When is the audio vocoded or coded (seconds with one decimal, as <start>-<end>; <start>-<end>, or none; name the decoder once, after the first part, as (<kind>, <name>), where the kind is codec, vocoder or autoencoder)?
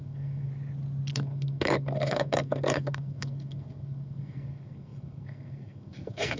0.0-0.5 (codec, SNAC); 1.1-6.4